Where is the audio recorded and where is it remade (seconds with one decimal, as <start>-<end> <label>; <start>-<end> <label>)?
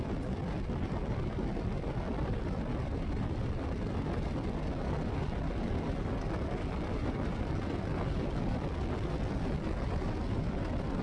0.0-2.1 recorded; 2.1-3.4 remade; 3.4-11.0 recorded